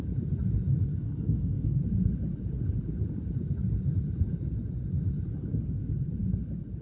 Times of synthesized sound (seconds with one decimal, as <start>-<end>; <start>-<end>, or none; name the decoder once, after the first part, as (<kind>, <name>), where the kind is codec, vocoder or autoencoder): 0.7-1.8 (codec, SNAC)